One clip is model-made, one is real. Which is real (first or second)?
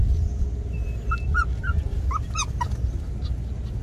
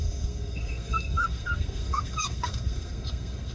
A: first